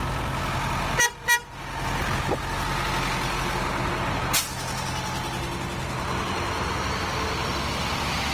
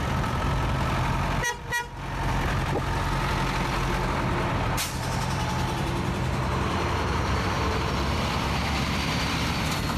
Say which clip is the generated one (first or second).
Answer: second